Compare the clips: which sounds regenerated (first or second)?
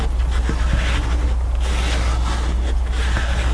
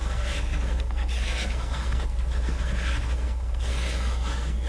second